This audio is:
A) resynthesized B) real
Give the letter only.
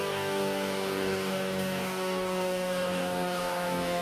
A